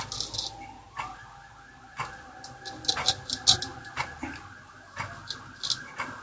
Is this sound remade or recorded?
recorded